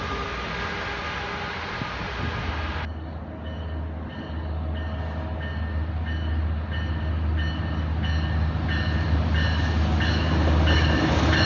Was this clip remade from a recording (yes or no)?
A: no